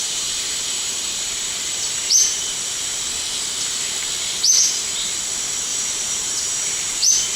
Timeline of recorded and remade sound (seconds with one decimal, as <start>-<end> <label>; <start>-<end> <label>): 0.0-2.8 remade; 2.8-5.7 recorded; 5.7-7.4 remade